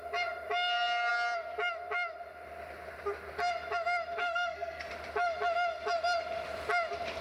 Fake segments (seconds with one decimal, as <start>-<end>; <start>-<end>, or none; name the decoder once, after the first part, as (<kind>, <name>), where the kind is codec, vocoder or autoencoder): 4.2-4.9 (codec, SNAC)